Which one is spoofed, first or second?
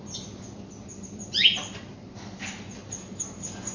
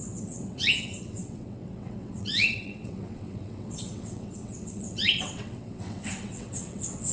second